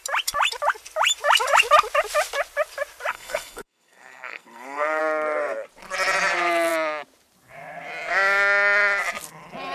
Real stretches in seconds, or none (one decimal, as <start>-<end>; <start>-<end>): 0.0-3.1; 5.0-9.7